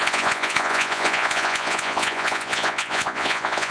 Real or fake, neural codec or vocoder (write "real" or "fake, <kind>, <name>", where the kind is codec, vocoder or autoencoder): fake, vocoder, Vocos